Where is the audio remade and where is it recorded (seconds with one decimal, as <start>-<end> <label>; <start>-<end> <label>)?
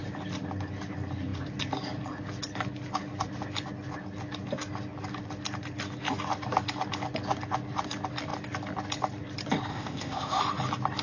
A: 0.0-9.7 recorded; 9.7-10.4 remade; 10.4-11.0 recorded